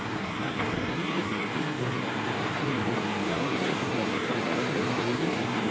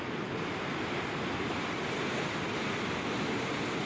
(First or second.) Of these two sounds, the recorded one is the second